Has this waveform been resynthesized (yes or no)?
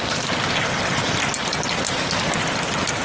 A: no